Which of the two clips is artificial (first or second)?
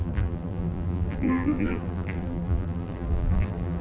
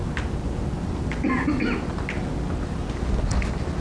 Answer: first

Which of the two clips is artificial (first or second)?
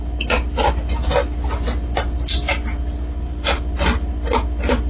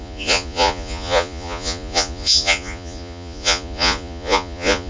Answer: second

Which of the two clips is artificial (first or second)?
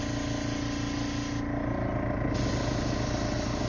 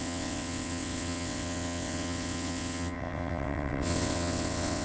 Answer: second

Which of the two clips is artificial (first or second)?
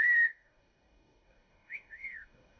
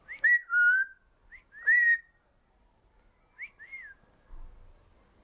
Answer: first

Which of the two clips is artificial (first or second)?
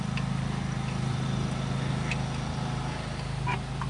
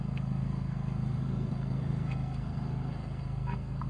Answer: second